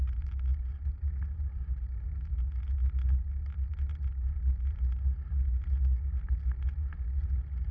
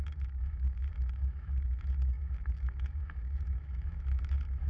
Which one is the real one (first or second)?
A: first